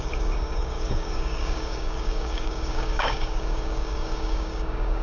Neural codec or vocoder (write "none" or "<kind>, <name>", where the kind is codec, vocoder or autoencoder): codec, DAC